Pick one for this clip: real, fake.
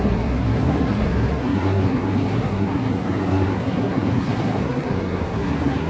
fake